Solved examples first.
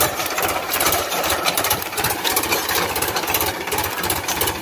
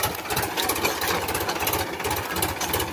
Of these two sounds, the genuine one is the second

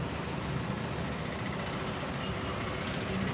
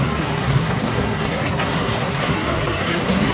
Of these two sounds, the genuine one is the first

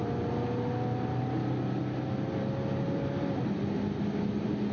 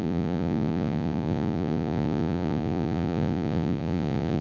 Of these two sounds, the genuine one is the first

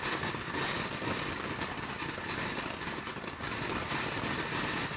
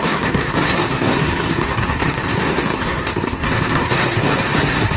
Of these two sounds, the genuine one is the first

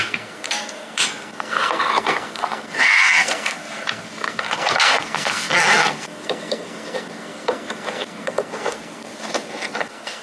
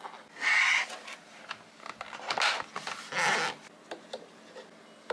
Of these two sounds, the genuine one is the second